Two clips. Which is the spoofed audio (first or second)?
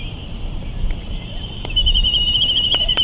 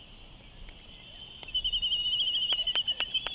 first